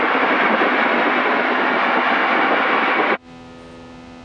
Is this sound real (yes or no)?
yes